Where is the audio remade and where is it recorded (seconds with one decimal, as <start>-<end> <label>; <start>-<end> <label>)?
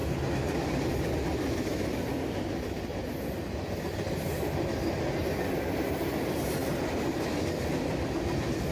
0.0-8.7 recorded